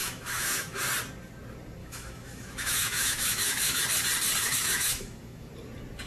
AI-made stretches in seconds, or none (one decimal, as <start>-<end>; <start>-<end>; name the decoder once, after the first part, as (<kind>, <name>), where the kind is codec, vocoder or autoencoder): 0.0-0.8 (autoencoder, DAC-VAE); 1.8-3.8; 4.4-5.5